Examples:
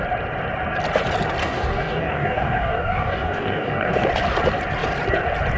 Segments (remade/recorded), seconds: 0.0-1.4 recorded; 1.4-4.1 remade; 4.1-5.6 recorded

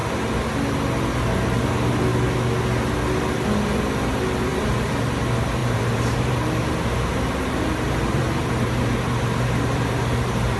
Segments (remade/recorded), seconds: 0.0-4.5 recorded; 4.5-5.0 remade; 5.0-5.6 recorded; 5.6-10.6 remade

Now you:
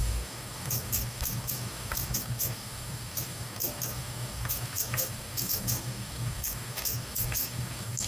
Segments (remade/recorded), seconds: 0.0-8.1 remade

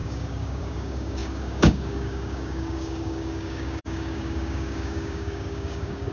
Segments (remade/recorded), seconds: 0.0-6.1 remade

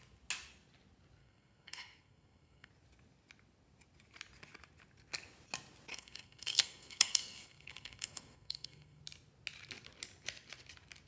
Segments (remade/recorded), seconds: 0.0-1.2 recorded; 1.2-2.7 remade; 2.7-5.9 recorded; 5.9-9.0 remade; 9.0-11.1 recorded

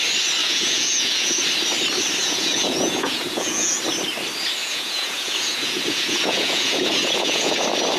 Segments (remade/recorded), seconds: 0.0-0.4 recorded; 0.4-1.4 remade; 1.4-2.2 recorded; 2.2-3.8 remade; 3.8-4.6 recorded; 4.6-7.6 remade; 7.6-8.0 recorded

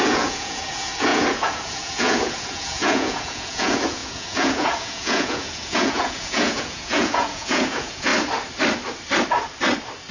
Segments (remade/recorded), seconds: 0.0-8.1 remade; 8.1-10.1 recorded

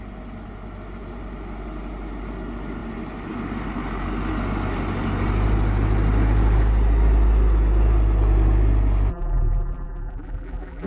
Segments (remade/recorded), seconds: 0.0-9.1 recorded; 9.1-10.9 remade